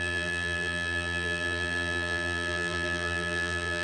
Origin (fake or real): fake